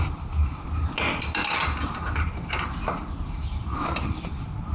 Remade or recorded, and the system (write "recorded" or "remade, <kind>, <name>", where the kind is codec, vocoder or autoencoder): recorded